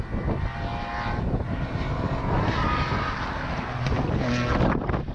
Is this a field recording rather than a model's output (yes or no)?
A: yes